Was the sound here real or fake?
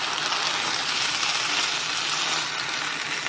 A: real